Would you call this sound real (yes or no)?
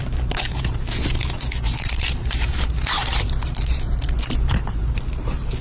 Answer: no